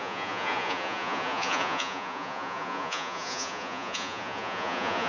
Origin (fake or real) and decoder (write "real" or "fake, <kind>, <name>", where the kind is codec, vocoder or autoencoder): fake, vocoder, Vocos